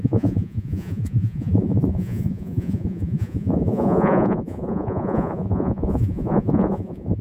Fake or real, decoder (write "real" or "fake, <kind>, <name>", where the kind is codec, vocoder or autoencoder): fake, vocoder, Vocos